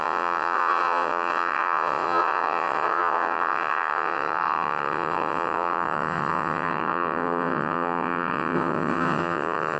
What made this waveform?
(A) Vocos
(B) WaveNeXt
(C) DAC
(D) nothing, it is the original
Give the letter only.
B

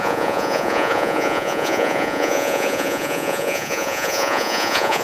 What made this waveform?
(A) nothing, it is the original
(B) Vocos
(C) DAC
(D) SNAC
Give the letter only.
B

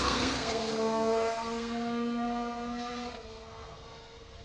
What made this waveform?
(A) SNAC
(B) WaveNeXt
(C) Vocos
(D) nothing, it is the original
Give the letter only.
A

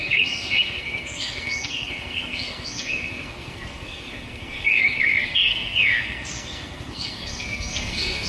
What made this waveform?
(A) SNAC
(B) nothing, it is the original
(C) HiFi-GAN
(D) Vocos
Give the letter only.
A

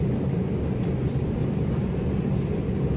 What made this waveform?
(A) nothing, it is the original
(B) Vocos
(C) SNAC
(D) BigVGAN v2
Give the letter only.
D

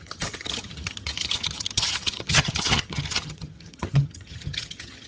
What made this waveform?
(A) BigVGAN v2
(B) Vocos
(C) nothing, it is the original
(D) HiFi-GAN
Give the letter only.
D